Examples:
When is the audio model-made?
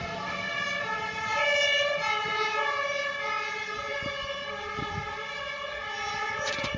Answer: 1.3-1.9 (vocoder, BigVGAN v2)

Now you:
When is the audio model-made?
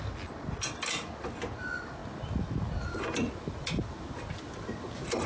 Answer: none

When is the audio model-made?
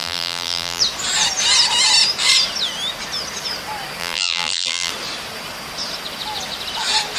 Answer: 0.0-0.8 (vocoder, BigVGAN v2); 4.0-4.9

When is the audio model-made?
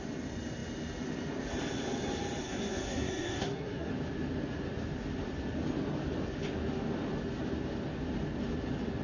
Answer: 2.4-3.9 (codec, SNAC)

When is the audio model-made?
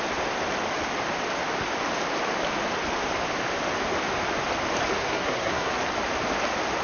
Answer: 5.0-5.7 (codec, SNAC)